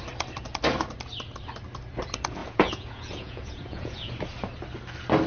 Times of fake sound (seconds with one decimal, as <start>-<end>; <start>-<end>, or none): 2.4-4.1